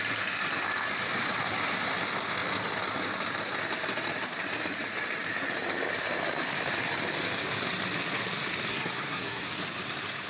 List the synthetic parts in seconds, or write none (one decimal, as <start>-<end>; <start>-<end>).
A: 8.7-9.5